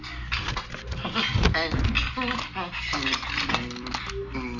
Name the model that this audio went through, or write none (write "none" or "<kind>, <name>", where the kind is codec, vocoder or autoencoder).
none